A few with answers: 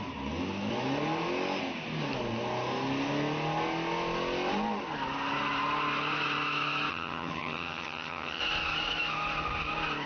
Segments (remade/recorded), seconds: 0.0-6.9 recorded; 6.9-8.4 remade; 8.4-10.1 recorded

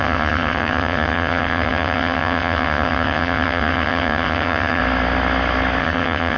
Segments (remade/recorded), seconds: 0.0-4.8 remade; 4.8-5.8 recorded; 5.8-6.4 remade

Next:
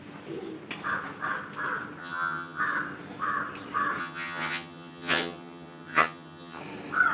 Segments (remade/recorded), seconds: 0.0-2.0 recorded; 2.0-2.6 remade; 2.6-4.0 recorded; 4.0-6.6 remade; 6.6-7.1 recorded

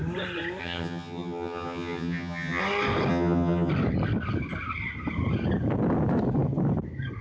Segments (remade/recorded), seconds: 0.0-0.6 recorded; 0.6-2.6 remade; 2.6-3.1 recorded; 3.1-3.7 remade; 3.7-7.2 recorded

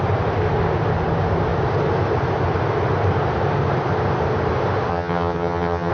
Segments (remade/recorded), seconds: 0.0-4.9 recorded; 4.9-5.9 remade